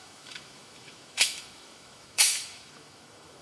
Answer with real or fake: fake